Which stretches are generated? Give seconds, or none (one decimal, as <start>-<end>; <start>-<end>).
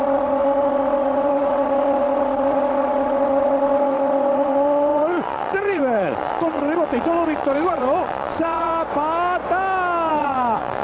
0.0-8.7; 10.1-10.8